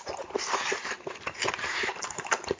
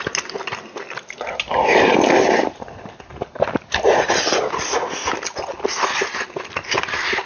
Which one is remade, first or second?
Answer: first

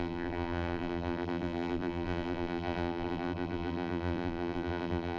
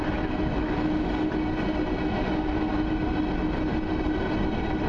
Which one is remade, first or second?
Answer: first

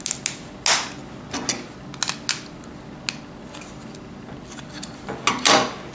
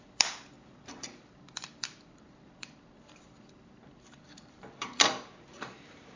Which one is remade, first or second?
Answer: second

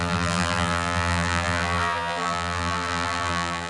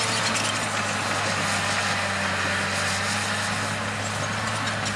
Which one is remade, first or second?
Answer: first